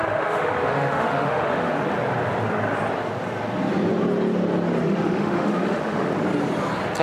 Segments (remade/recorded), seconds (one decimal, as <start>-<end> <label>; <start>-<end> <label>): 0.0-1.7 remade; 1.7-4.8 recorded; 4.8-6.1 remade; 6.1-7.0 recorded